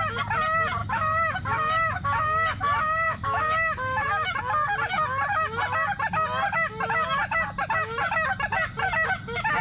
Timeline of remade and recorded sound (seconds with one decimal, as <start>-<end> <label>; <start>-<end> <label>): 0.0-0.8 recorded; 0.8-4.4 remade; 4.4-9.6 recorded